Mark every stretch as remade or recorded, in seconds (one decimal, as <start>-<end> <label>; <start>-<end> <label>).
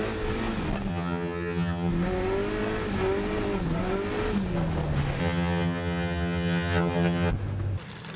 0.0-0.9 recorded; 0.9-1.9 remade; 1.9-5.2 recorded; 5.2-7.3 remade; 7.3-8.2 recorded